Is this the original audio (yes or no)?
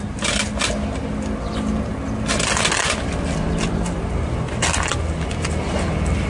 yes